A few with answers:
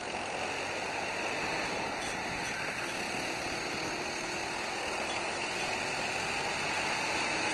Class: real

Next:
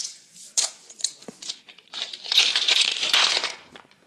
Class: fake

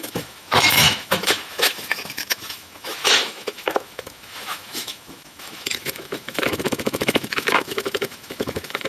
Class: fake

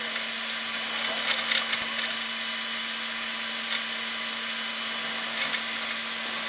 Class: real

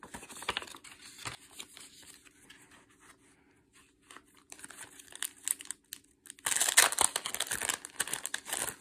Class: real